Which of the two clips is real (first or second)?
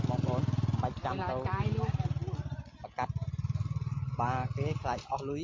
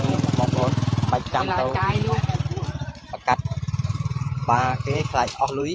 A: first